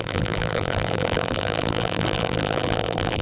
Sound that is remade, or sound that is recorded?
remade